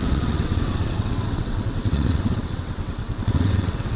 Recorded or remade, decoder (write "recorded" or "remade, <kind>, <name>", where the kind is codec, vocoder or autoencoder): remade, vocoder, WaveNeXt